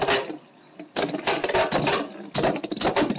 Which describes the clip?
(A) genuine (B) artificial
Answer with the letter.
A